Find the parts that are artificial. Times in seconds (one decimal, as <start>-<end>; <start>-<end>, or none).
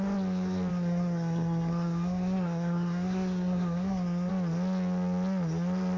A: 0.7-4.3